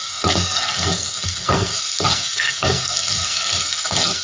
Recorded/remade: remade